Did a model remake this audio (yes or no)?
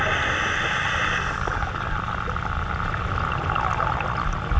no